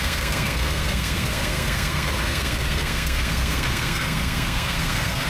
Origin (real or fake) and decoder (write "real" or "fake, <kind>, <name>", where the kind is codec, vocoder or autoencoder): fake, codec, SNAC